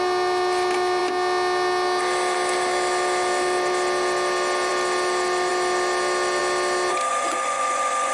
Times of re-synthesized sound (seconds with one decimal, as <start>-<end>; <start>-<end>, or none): 7.1-8.1